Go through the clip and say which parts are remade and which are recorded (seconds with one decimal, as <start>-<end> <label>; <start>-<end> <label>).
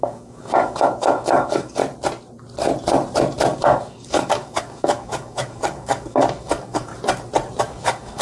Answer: 0.0-1.8 remade; 1.8-3.6 recorded; 3.6-6.9 remade; 6.9-7.6 recorded; 7.6-8.2 remade